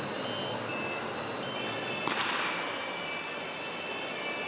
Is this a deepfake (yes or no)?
no